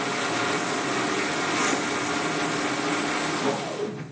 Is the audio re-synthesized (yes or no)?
no